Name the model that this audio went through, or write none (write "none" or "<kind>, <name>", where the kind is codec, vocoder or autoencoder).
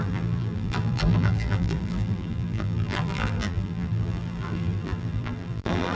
vocoder, BigVGAN v2